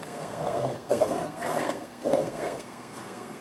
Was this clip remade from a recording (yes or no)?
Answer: yes